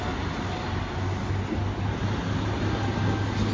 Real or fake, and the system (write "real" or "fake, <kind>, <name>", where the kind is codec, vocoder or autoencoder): real